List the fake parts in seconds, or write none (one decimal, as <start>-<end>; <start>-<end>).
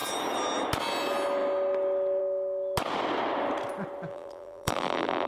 4.1-5.3